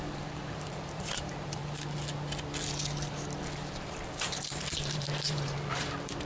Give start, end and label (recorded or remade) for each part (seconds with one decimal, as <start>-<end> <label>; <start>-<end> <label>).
0.0-1.6 remade; 1.6-3.8 recorded; 3.8-6.3 remade